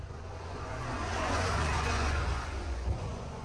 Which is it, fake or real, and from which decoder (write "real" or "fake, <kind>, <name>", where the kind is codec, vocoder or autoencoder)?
fake, vocoder, Vocos